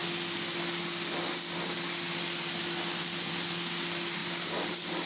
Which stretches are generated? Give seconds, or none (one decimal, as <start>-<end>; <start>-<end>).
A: 4.2-5.1

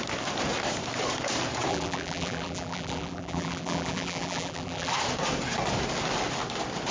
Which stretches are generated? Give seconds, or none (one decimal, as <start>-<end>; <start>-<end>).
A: 1.7-4.9

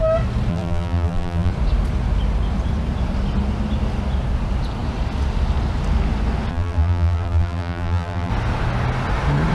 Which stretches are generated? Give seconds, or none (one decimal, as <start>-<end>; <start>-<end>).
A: 0.5-1.5; 6.5-8.3

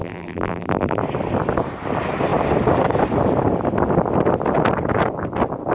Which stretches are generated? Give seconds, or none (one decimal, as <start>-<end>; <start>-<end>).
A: 0.0-1.0

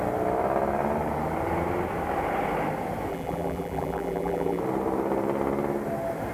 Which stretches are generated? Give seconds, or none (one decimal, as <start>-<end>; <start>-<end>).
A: 3.1-4.6